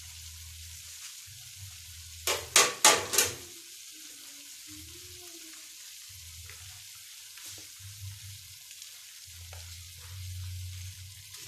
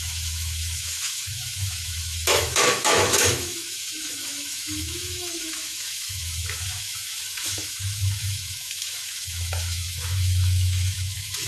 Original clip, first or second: first